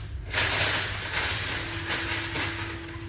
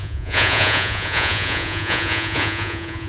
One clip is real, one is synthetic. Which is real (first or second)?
first